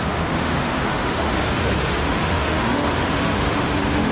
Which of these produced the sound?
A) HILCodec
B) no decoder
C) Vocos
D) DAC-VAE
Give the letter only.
D